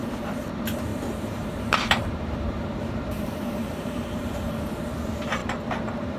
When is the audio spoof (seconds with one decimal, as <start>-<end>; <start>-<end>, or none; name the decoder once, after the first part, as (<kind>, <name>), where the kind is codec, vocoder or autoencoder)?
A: 0.9-4.6 (vocoder, BigVGAN v2)